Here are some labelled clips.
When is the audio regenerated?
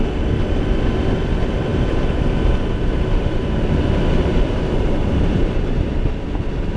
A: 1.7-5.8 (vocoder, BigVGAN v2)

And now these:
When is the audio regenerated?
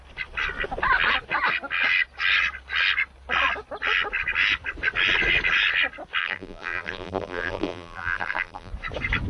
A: 6.2-8.7 (vocoder, BigVGAN v2)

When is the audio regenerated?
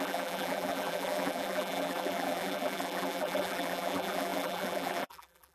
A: 0.0-5.5 (vocoder, BigVGAN v2)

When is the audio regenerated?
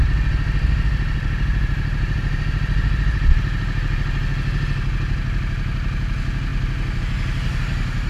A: none